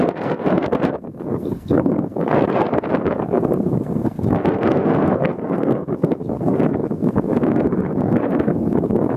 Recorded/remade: remade